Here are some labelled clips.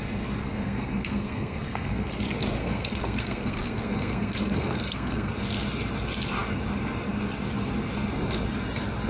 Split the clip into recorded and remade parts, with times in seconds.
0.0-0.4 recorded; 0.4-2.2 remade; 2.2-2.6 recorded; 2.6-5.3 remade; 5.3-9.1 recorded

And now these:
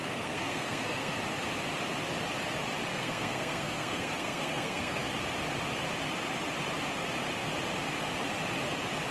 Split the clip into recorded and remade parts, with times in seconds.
0.0-1.2 remade; 1.2-2.9 recorded; 2.9-5.1 remade; 5.1-9.1 recorded

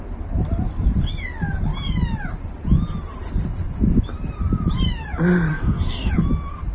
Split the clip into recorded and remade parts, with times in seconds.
0.0-5.5 recorded; 5.5-6.1 remade; 6.1-6.7 recorded

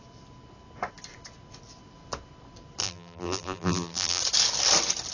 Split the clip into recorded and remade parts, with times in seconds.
0.0-2.8 recorded; 2.8-4.2 remade; 4.2-5.1 recorded

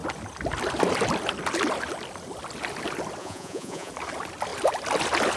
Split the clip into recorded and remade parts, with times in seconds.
0.0-3.2 recorded; 3.2-3.9 remade; 3.9-5.4 recorded

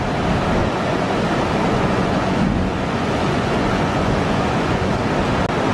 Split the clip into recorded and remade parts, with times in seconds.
0.0-0.6 recorded; 0.6-1.2 remade; 1.2-1.7 recorded; 1.7-4.9 remade; 4.9-5.7 recorded

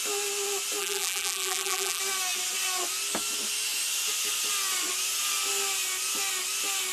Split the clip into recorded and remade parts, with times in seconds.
0.0-0.8 recorded; 0.8-2.0 remade; 2.0-6.9 recorded